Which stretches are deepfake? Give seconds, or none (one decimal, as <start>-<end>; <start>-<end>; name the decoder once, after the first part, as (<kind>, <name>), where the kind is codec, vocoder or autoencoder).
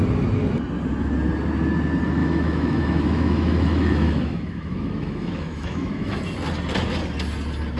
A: 2.2-6.2 (autoencoder, DAC-VAE)